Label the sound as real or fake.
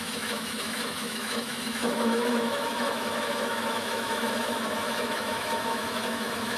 fake